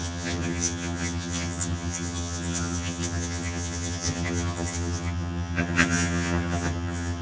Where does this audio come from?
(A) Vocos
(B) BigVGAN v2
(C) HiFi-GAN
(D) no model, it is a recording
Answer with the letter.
C